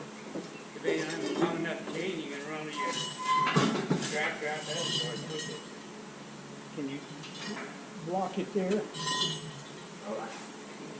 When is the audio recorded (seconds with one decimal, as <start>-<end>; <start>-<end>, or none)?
0.0-3.6; 5.0-9.8